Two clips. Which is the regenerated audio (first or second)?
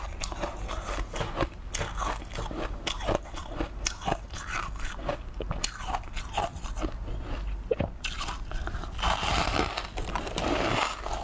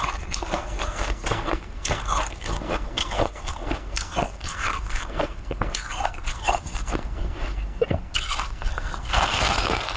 second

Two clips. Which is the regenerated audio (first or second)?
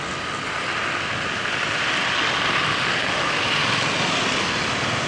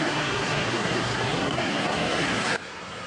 second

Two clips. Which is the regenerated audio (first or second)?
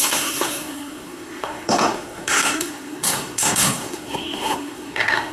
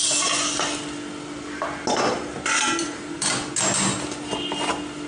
first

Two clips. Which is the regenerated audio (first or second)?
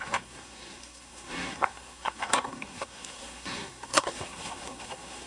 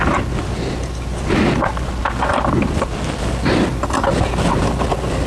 first